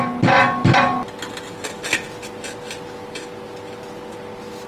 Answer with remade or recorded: recorded